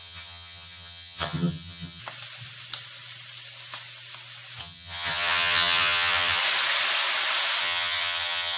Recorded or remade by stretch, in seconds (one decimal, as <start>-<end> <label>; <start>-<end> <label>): 0.0-2.0 remade; 2.0-4.6 recorded; 4.6-6.4 remade; 6.4-7.6 recorded; 7.6-8.6 remade